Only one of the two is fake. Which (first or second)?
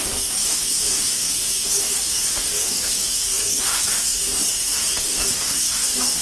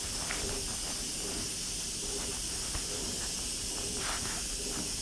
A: first